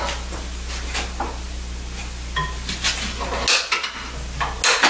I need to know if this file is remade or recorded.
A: recorded